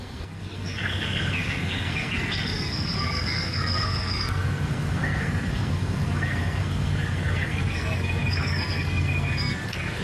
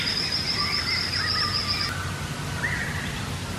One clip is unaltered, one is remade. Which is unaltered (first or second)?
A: second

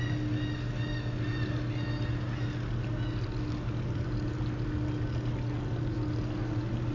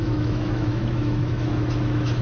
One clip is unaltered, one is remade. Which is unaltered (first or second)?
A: first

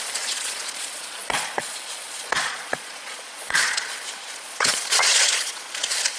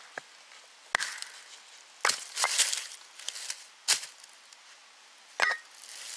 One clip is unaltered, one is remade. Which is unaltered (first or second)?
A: second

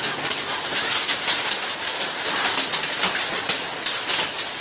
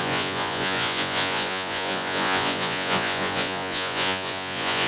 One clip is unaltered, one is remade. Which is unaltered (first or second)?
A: first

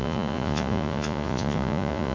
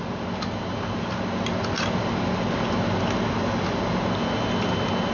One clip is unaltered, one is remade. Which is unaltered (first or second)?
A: second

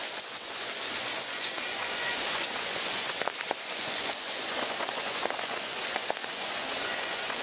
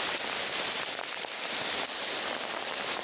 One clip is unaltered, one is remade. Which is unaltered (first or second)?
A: second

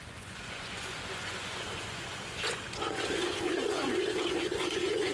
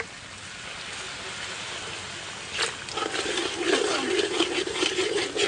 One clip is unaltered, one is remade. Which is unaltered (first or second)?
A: second